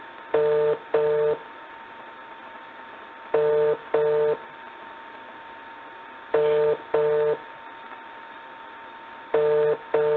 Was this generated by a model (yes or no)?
no